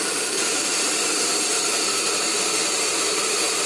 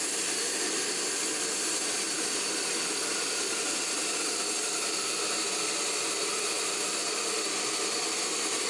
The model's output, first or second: first